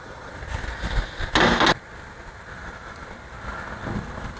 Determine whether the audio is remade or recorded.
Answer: recorded